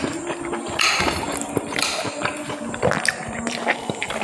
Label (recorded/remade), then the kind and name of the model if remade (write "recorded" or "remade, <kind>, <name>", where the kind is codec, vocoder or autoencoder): recorded